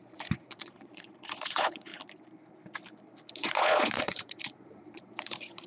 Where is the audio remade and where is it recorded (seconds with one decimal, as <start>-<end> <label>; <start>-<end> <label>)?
0.0-1.9 remade; 1.9-3.3 recorded; 3.3-5.7 remade